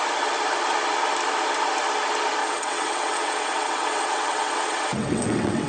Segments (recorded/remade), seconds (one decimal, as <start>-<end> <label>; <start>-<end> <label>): 0.0-2.4 recorded; 2.4-5.7 remade